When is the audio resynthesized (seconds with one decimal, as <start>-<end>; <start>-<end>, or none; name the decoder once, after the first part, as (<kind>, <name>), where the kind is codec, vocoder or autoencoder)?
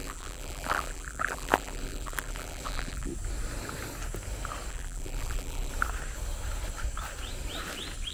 0.0-3.1 (vocoder, BigVGAN v2); 4.7-5.7